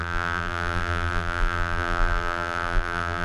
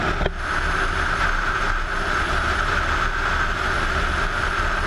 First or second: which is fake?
first